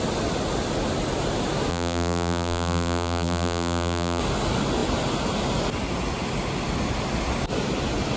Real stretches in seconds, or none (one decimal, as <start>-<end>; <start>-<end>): 0.0-1.7; 4.2-8.2